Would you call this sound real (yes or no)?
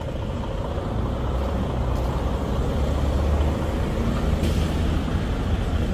yes